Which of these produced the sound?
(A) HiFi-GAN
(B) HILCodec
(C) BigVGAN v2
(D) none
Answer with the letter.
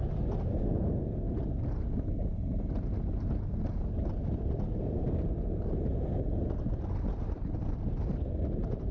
D